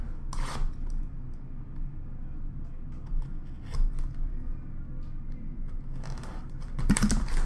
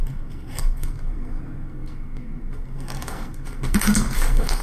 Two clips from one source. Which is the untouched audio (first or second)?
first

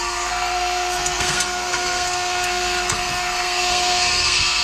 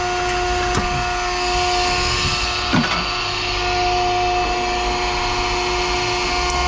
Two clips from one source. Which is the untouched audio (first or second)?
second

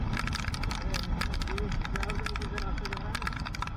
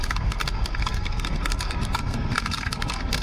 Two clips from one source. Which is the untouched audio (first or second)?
first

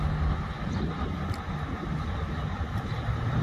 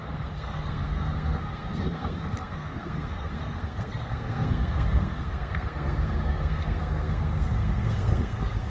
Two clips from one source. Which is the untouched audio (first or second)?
first